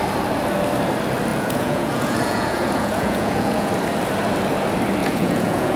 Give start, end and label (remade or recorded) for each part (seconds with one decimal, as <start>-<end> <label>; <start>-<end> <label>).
0.0-1.3 recorded; 1.3-3.7 remade; 3.7-5.0 recorded; 5.0-5.8 remade